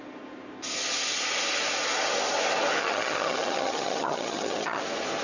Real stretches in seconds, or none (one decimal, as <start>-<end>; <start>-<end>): 0.0-2.8; 4.8-5.2